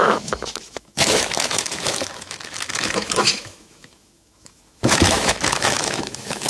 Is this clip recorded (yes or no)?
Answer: no